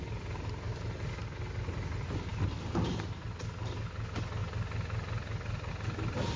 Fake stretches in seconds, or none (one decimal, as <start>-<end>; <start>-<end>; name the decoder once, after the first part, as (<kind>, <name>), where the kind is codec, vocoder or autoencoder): none